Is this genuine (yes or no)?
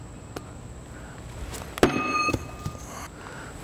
yes